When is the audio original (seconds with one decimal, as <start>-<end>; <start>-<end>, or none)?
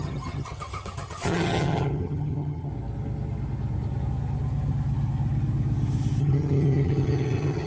2.7-6.2